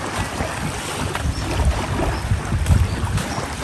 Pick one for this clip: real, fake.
real